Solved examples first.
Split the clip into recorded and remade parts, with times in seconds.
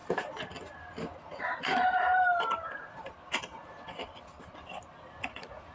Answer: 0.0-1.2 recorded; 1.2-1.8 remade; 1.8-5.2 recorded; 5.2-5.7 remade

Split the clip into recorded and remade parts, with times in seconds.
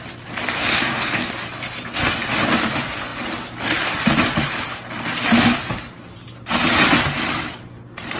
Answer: 0.0-0.7 recorded; 0.7-1.3 remade; 1.3-8.2 recorded